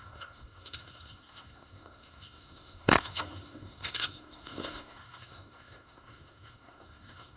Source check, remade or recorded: remade